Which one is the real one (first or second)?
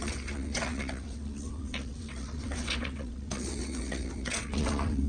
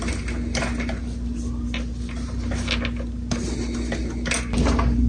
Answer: second